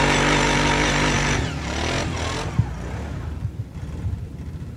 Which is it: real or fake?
real